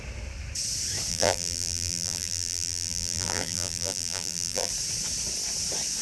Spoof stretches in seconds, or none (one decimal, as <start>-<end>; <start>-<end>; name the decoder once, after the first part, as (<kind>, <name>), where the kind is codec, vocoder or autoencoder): 1.1-4.7 (vocoder, BigVGAN v2)